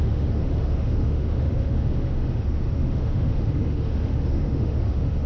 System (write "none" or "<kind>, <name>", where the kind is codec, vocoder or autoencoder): autoencoder, DAC-VAE